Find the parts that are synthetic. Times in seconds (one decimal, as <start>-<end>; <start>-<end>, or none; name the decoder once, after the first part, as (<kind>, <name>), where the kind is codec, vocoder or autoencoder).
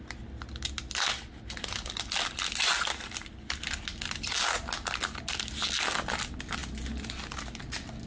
none